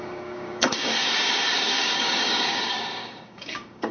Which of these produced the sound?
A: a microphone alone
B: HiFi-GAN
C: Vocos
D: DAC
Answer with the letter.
D